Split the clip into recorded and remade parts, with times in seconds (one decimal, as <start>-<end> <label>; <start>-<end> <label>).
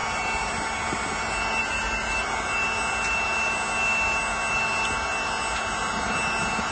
0.0-6.7 recorded